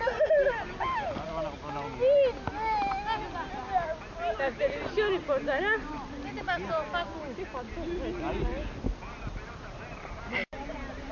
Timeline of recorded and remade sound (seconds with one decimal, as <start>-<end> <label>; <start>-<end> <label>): 0.0-11.1 recorded